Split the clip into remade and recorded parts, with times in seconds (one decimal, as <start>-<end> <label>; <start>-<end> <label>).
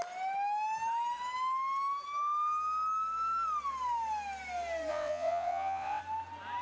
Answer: 0.0-4.9 recorded; 4.9-6.0 remade; 6.0-6.6 recorded